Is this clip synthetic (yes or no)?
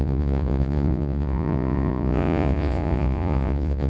yes